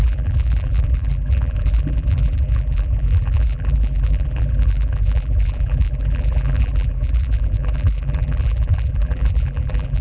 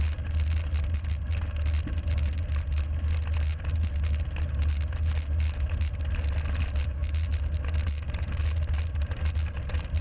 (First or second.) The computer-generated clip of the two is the first